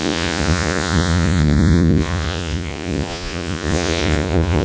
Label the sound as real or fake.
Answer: fake